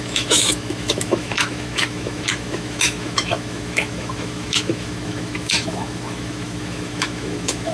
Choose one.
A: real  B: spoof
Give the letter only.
B